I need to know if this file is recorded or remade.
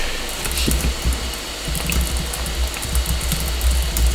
recorded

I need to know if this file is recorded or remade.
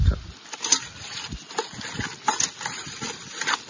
recorded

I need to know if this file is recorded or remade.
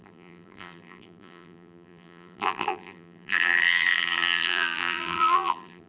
remade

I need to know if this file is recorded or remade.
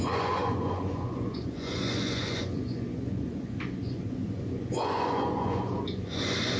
remade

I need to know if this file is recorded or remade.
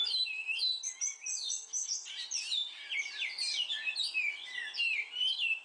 remade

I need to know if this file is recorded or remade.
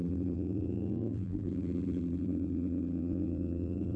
remade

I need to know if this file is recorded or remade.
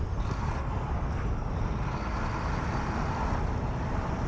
recorded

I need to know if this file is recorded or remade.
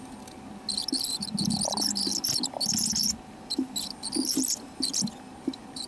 recorded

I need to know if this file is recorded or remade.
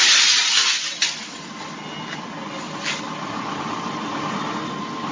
recorded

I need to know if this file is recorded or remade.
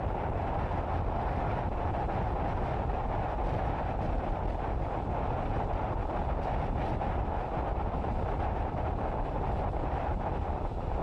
recorded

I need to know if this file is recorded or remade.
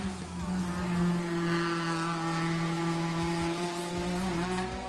recorded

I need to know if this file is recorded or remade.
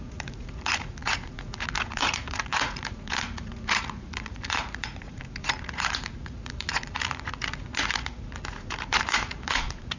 remade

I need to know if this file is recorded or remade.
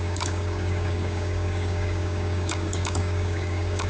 remade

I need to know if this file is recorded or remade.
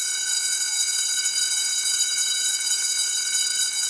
remade